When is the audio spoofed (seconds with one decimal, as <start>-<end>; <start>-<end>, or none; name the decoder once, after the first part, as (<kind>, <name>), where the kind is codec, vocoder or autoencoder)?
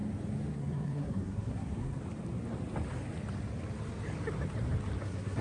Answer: 0.5-2.0 (codec, SNAC); 5.0-5.4